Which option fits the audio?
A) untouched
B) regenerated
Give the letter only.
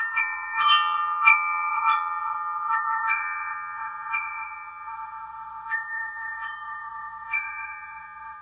B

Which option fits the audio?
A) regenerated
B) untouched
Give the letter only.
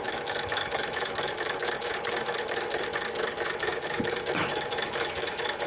A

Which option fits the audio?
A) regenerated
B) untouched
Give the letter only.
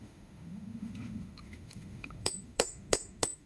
A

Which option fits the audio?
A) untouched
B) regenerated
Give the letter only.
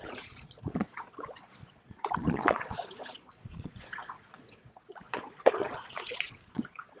B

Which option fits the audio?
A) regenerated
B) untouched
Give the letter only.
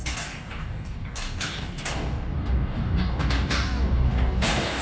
A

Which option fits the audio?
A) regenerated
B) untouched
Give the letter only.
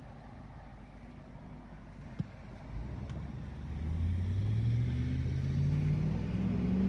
B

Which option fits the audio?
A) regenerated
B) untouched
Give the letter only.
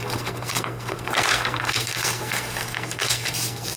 A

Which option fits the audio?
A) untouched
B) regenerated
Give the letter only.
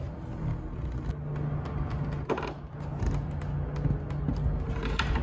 A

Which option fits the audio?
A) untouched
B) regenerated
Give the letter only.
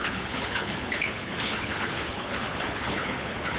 B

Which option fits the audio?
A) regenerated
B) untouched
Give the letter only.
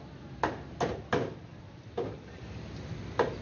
B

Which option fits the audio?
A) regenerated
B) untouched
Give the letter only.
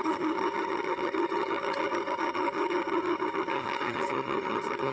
A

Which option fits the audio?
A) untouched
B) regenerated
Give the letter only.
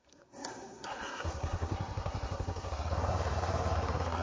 B